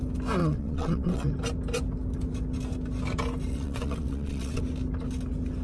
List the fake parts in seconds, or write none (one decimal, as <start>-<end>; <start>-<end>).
0.4-1.3; 3.5-4.6